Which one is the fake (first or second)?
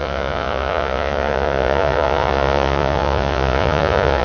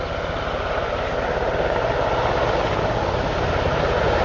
first